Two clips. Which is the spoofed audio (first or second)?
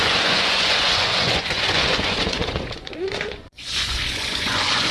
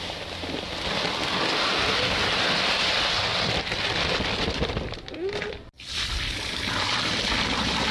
first